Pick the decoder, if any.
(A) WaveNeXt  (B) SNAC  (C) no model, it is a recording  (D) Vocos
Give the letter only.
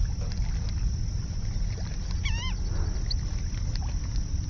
C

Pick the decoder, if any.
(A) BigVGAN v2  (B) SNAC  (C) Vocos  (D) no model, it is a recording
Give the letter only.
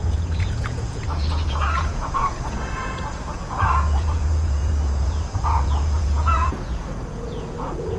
C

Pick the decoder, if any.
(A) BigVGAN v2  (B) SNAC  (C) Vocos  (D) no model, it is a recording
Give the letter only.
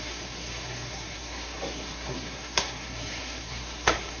B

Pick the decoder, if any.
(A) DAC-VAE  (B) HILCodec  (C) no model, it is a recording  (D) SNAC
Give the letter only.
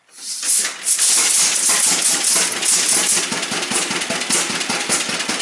C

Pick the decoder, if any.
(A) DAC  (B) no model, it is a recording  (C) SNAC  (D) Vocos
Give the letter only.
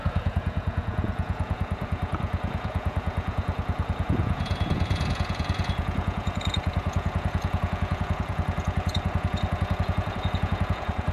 D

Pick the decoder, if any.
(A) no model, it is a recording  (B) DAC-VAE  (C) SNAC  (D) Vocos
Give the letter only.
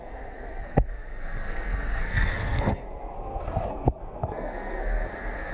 C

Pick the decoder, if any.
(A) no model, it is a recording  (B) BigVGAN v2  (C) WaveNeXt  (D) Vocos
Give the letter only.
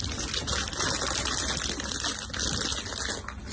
A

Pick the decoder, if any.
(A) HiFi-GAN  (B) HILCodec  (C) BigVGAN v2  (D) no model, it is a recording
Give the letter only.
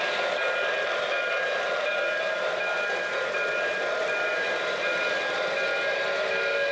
D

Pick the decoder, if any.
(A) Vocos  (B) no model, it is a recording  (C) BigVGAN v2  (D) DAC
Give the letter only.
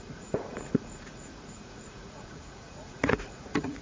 A